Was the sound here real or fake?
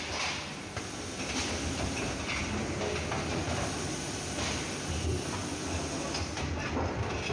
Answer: real